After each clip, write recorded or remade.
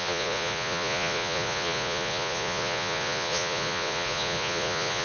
remade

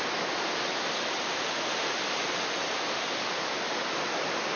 recorded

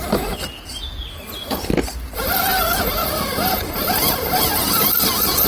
recorded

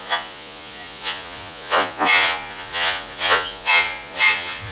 remade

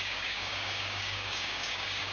remade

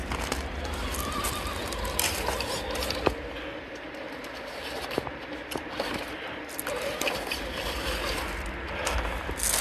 recorded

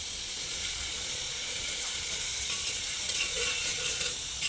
remade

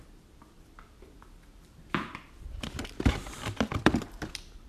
remade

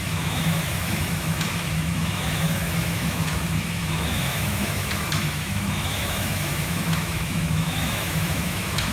remade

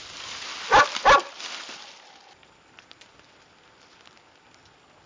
recorded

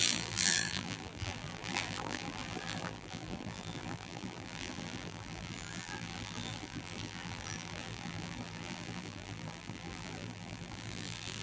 remade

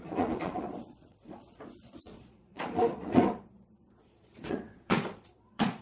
remade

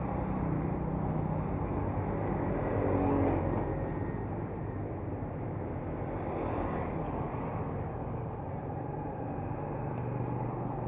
recorded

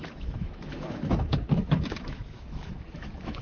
remade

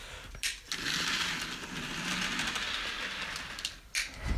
recorded